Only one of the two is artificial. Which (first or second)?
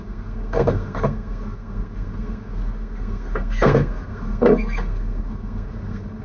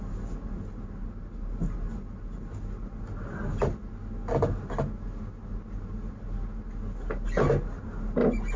first